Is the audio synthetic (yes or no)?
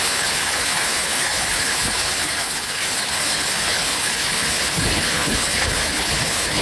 yes